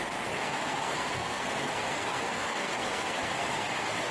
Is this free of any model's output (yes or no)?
no